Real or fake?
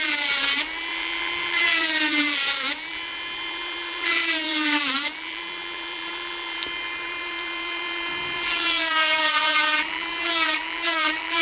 fake